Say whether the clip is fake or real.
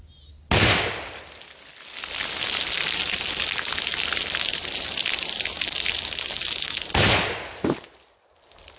real